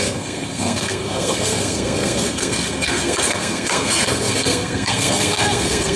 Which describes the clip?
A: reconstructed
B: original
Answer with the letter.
A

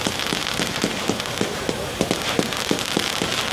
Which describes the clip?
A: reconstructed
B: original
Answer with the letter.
B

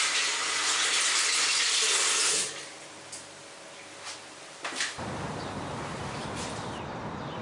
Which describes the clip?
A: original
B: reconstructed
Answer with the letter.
A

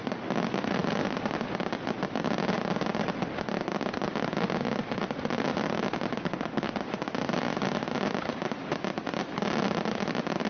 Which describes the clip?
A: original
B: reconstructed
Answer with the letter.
A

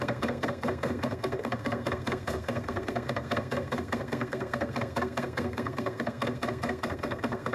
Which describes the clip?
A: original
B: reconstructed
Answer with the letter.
B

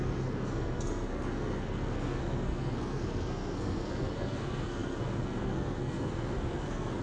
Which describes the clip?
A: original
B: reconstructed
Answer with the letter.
B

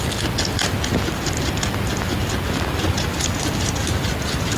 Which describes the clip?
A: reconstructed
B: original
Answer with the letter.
B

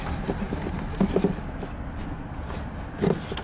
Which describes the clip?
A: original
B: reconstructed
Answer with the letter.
A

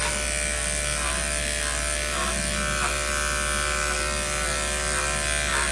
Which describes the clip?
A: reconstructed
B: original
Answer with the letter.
B